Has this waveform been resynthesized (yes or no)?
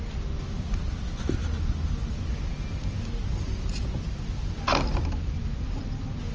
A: no